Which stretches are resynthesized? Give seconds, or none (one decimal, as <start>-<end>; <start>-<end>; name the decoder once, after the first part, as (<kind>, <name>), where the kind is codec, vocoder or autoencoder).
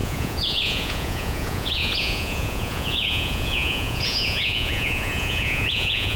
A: 0.0-6.2 (vocoder, Vocos)